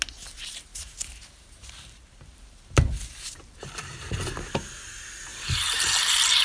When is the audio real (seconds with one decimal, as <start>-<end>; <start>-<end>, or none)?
0.0-0.7; 4.3-5.3